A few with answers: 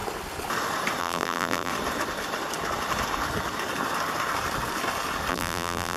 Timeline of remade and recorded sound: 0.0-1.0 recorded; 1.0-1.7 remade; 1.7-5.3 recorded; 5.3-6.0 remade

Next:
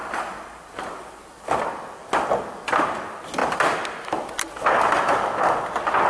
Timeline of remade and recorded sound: 0.0-1.6 remade; 1.6-6.1 recorded